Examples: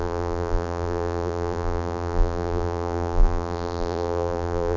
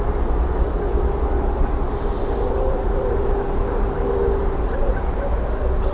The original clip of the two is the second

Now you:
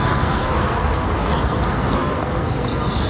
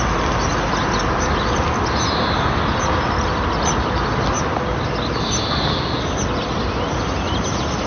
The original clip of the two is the second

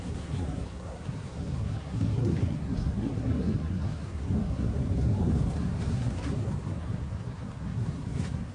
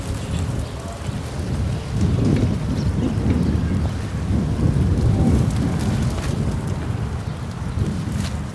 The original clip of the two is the second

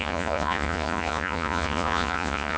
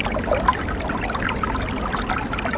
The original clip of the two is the second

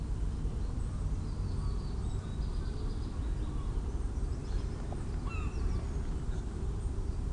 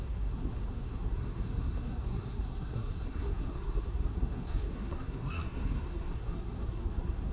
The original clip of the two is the first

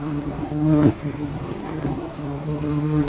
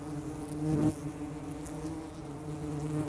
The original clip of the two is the second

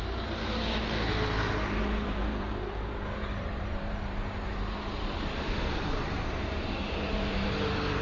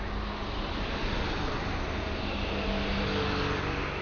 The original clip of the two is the second